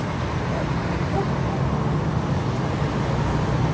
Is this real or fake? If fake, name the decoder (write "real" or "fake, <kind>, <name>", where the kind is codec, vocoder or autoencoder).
real